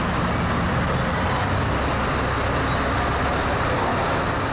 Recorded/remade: recorded